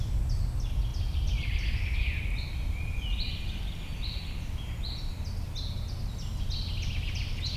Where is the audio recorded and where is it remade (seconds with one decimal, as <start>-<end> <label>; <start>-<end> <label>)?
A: 0.0-7.6 recorded